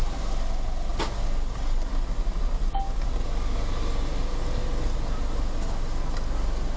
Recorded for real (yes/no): yes